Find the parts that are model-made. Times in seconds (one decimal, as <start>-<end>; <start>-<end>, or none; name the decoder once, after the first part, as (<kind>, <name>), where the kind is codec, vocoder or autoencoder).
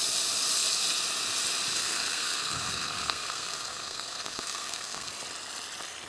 1.7-5.1 (codec, SNAC)